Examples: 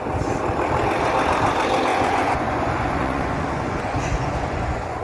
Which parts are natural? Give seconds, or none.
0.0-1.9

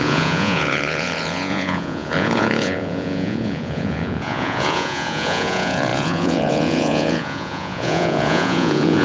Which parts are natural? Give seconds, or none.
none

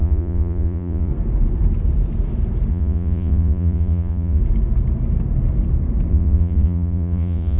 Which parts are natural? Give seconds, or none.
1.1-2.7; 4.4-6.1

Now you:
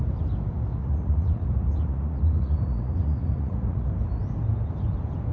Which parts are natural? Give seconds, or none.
0.0-0.7; 3.9-5.3

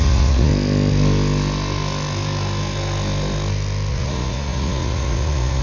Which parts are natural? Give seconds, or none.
0.5-3.9

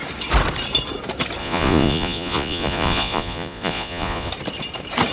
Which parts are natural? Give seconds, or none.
0.0-1.4; 4.3-5.1